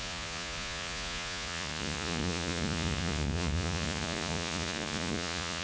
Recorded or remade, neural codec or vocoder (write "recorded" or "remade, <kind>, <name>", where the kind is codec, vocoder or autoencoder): remade, vocoder, Vocos